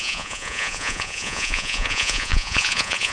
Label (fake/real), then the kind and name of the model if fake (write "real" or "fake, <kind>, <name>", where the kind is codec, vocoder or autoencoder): fake, vocoder, Vocos